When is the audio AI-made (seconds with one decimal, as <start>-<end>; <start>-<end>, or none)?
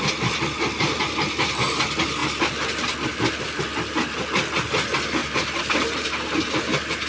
none